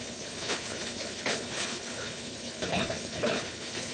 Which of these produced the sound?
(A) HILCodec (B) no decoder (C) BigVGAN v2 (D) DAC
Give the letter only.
A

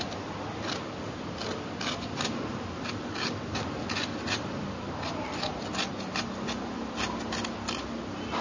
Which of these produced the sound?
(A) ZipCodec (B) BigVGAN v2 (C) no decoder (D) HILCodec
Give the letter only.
C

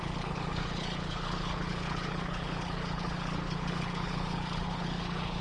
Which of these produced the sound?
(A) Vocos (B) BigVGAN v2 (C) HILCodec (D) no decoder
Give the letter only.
C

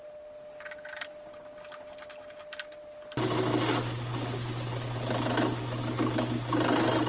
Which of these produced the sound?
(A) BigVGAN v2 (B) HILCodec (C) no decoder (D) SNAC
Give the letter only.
C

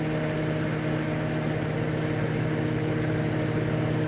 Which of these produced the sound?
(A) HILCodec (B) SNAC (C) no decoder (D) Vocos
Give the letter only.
C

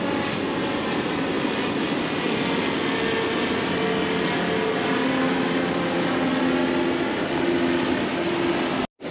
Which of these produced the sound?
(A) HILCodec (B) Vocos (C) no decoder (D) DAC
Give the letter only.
C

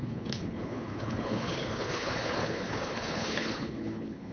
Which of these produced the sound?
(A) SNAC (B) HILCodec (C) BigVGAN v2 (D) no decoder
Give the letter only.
B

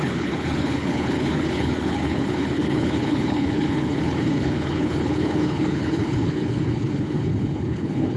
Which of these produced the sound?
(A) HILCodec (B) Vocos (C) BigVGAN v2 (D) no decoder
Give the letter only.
A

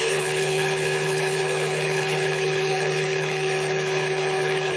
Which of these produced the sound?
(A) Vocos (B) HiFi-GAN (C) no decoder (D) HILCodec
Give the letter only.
D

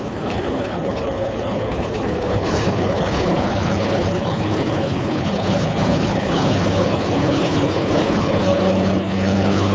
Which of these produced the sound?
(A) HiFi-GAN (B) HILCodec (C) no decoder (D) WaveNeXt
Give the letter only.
B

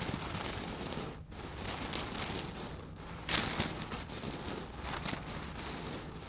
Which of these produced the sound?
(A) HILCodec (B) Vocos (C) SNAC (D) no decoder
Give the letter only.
D